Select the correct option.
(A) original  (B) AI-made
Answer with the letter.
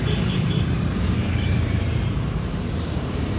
B